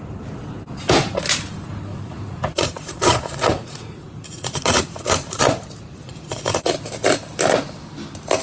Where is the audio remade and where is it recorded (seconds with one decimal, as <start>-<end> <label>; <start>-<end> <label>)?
0.0-1.9 recorded; 1.9-5.4 remade; 5.4-6.0 recorded; 6.0-6.7 remade; 6.7-8.4 recorded